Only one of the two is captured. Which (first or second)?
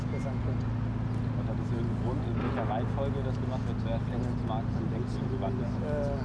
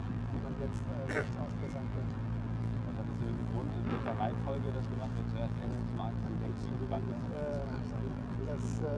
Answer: first